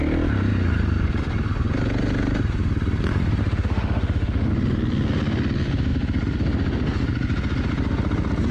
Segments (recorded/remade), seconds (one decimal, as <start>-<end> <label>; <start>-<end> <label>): 0.0-3.4 recorded; 3.4-4.5 remade; 4.5-8.5 recorded